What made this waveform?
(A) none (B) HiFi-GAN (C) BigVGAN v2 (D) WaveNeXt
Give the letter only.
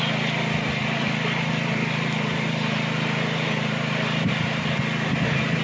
A